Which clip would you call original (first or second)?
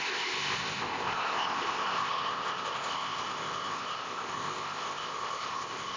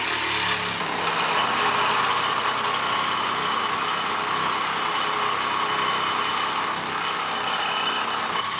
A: second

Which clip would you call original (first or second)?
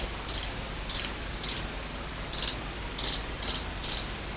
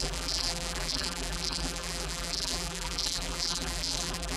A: first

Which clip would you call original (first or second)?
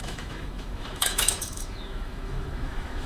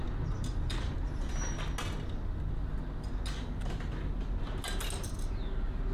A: second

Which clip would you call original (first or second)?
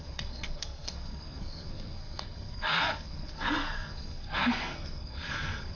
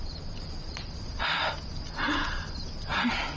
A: second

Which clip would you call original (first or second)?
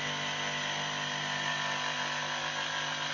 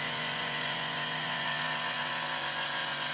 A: first